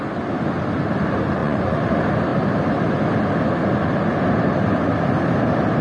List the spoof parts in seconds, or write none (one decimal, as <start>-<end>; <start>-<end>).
1.4-1.9